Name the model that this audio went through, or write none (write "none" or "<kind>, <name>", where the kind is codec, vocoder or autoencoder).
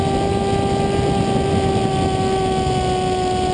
none